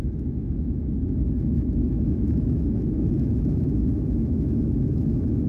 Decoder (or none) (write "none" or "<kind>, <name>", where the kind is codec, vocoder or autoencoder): autoencoder, DAC-VAE